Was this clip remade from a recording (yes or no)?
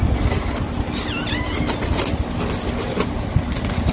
no